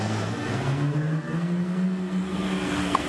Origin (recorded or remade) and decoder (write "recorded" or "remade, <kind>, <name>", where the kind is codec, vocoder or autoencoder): remade, codec, SNAC